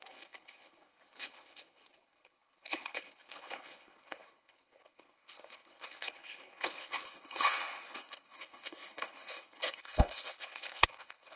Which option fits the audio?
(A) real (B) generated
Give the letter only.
B